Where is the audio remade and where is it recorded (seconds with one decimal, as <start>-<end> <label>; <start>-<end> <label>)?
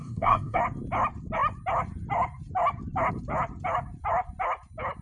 0.0-0.6 remade; 0.6-5.0 recorded